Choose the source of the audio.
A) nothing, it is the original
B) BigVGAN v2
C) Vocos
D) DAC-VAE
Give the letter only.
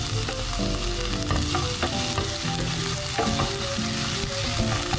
A